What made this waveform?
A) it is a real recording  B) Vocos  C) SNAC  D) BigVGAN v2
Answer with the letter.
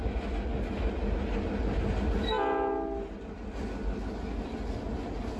A